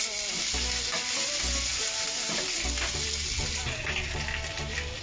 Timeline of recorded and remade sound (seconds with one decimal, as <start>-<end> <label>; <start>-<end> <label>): 0.0-5.0 recorded